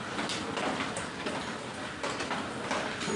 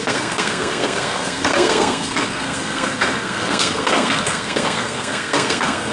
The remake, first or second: second